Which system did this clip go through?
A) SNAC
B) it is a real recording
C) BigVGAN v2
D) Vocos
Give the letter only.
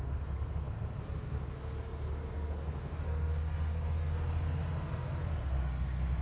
A